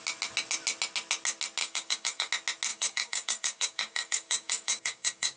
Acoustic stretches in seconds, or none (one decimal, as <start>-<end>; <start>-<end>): 0.0-1.6; 2.3-2.7